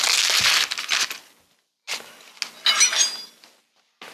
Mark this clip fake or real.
real